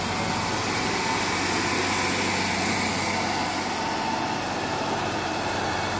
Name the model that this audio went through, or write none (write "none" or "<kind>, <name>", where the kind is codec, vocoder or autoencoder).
none